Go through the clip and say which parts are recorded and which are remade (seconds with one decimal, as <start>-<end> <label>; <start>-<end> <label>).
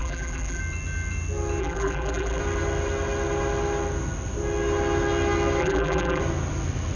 0.0-0.6 remade; 0.6-1.6 recorded; 1.6-2.4 remade; 2.4-5.6 recorded; 5.6-6.2 remade; 6.2-7.0 recorded